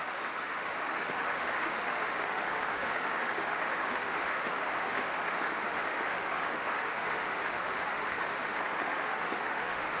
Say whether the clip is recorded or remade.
remade